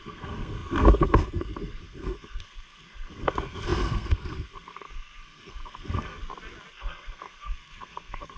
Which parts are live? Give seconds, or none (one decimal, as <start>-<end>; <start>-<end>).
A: 6.2-6.7